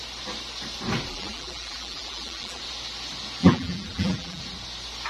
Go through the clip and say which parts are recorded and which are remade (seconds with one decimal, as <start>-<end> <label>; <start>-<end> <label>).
0.0-1.1 recorded; 1.1-2.6 remade; 2.6-3.4 recorded; 3.4-4.4 remade; 4.4-5.1 recorded